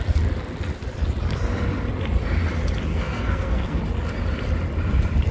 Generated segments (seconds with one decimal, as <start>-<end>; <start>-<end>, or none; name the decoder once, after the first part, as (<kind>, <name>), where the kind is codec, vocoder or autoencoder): 2.9-3.8 (codec, SNAC)